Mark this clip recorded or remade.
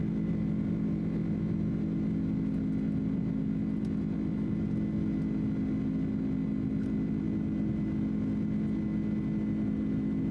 recorded